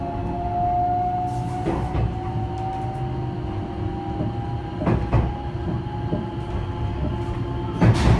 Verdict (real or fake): real